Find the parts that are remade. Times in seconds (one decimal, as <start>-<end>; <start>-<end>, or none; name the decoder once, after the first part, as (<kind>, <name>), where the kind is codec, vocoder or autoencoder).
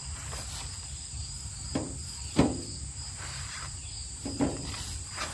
none